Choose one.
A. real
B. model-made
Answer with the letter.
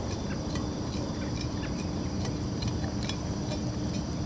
A